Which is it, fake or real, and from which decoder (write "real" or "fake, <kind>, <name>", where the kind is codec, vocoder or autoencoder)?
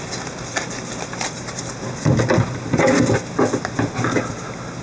real